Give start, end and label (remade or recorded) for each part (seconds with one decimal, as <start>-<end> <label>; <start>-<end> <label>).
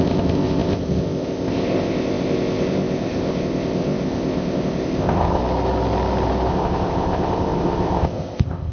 0.0-5.4 remade; 5.4-6.5 recorded; 6.5-8.7 remade